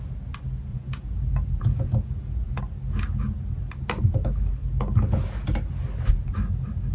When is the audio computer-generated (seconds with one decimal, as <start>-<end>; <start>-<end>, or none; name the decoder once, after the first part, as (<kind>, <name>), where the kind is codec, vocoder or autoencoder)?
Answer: 0.7-2.6 (vocoder, Vocos)